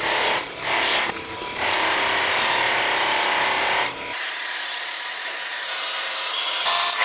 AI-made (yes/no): yes